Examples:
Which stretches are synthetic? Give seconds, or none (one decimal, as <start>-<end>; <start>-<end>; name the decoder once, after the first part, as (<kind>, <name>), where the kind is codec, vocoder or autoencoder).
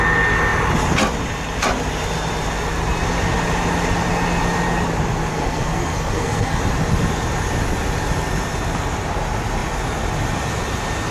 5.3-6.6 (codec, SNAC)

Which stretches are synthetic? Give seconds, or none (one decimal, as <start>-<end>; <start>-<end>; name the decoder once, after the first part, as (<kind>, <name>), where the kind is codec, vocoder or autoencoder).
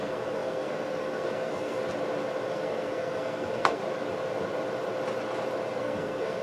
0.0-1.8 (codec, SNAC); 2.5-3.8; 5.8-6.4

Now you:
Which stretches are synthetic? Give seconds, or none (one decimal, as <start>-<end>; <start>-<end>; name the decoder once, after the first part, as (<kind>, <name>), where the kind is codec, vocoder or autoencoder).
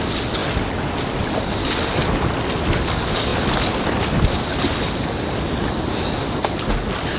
none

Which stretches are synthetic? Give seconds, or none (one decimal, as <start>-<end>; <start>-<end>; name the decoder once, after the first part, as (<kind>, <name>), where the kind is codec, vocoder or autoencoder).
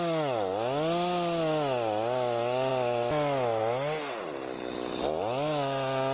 none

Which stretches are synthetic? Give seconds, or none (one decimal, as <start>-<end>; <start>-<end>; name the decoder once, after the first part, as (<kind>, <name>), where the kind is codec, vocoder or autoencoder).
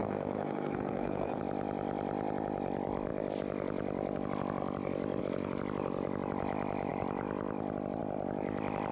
0.0-1.4 (codec, SNAC)